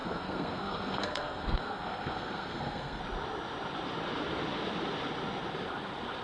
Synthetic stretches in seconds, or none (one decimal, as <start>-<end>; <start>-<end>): 0.0-3.0